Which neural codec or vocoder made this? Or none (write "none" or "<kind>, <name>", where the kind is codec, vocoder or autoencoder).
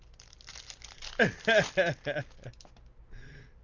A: none